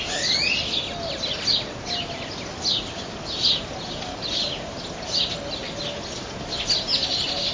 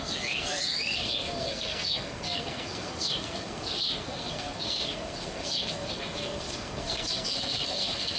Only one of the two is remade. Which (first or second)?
second